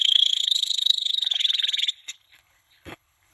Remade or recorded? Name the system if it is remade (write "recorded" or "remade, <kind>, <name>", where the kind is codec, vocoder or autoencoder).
remade, codec, HILCodec